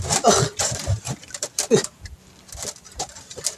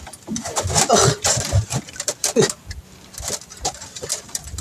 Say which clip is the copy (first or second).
first